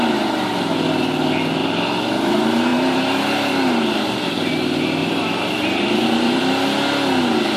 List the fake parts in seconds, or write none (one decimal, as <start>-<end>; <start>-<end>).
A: 2.7-4.5; 5.0-6.4

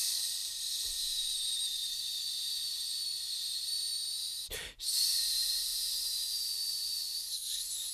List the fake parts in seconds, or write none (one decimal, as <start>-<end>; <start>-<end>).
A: none

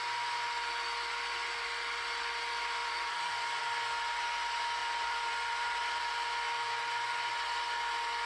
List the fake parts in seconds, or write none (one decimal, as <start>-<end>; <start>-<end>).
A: 2.8-3.6; 4.8-6.0

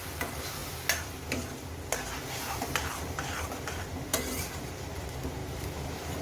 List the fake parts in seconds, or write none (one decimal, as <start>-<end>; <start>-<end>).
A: none